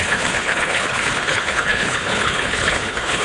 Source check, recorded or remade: remade